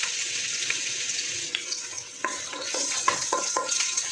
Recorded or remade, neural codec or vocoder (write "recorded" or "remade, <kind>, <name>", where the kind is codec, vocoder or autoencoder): remade, vocoder, WaveNeXt